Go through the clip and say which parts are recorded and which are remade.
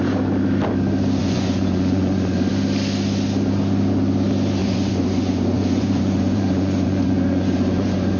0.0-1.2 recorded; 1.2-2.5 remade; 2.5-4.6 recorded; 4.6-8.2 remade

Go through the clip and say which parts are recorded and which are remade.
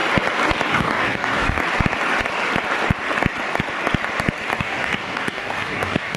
0.0-0.7 recorded; 0.7-1.6 remade; 1.6-4.6 recorded; 4.6-6.2 remade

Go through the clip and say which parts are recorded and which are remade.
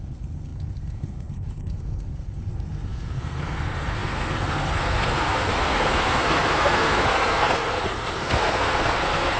0.0-9.4 remade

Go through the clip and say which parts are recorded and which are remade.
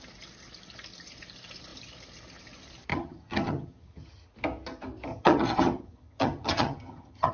0.0-2.9 recorded; 2.9-4.3 remade; 4.3-5.1 recorded; 5.1-7.3 remade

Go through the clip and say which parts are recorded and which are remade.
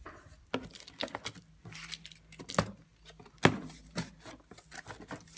0.0-5.4 recorded